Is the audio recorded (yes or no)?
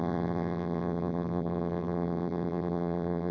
no